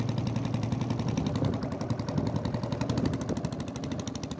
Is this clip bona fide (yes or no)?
yes